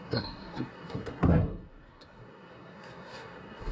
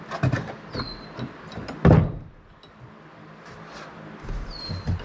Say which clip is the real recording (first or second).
second